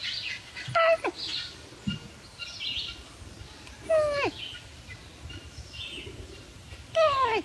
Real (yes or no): yes